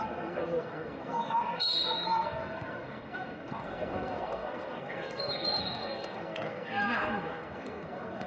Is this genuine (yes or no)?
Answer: no